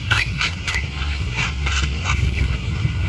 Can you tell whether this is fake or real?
fake